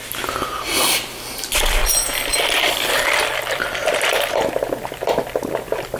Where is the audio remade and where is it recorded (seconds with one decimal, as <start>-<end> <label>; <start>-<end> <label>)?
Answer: 0.0-1.8 recorded; 1.8-5.4 remade; 5.4-6.0 recorded